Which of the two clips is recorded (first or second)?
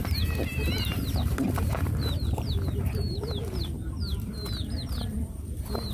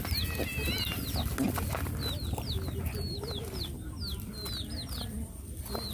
second